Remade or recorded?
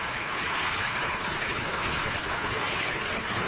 remade